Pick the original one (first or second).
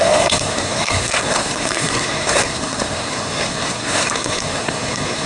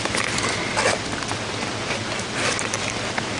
second